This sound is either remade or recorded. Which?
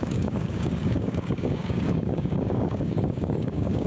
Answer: remade